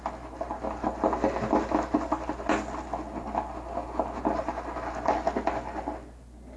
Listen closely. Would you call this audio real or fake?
real